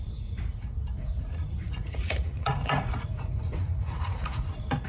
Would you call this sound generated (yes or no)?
yes